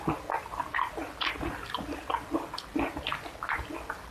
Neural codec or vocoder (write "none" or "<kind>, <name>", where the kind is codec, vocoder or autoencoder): none